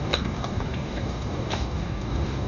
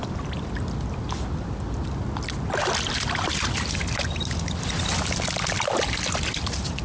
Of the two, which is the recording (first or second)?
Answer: second